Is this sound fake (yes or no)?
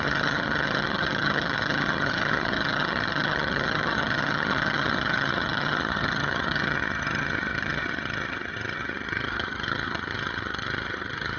yes